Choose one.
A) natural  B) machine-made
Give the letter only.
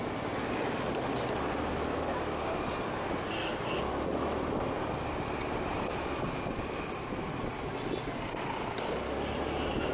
A